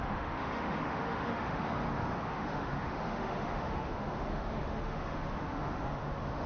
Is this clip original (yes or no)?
no